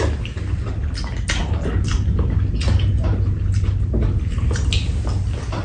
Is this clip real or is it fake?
real